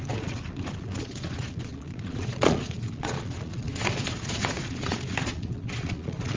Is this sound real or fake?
fake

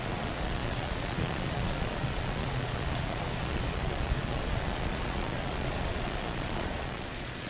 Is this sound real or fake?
fake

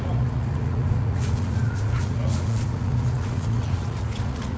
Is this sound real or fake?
fake